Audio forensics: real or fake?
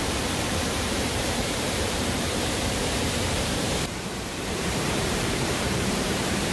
fake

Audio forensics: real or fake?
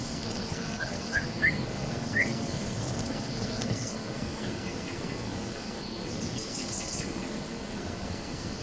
fake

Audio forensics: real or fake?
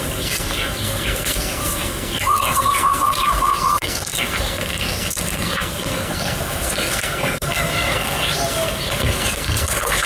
fake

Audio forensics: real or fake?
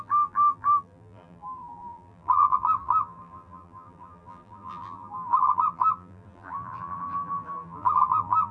fake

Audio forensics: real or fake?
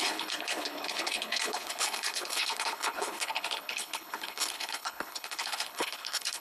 fake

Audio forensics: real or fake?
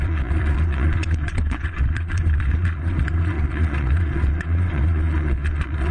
fake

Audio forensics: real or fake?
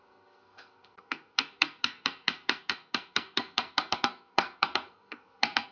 fake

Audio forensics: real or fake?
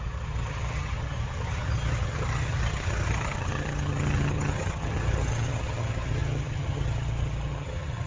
fake